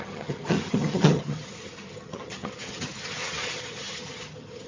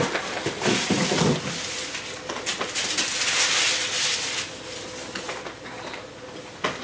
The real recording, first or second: second